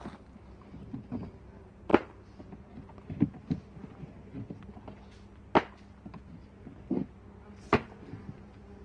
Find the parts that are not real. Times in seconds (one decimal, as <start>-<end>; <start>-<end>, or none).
none